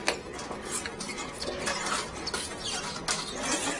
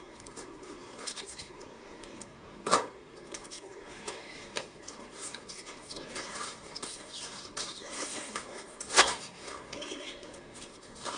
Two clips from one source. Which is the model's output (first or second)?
second